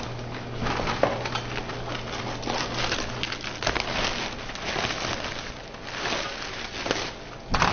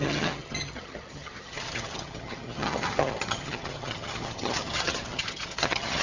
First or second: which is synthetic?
second